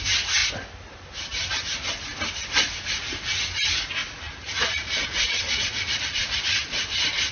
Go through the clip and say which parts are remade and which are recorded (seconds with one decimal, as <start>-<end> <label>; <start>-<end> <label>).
0.0-4.0 recorded; 4.0-6.8 remade; 6.8-7.3 recorded